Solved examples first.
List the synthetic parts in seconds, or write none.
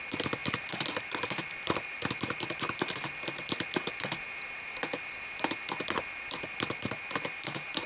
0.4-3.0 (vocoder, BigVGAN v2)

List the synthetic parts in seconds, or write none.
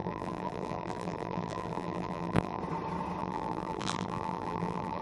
0.0-2.6 (vocoder, BigVGAN v2); 3.2-5.0